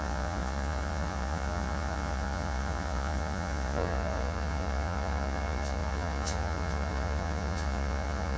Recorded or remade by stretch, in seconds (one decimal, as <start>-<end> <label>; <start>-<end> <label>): 0.0-8.4 remade